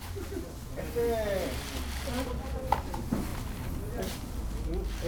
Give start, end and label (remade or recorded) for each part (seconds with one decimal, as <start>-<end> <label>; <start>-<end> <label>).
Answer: 0.0-3.3 recorded; 3.3-4.1 remade; 4.1-5.1 recorded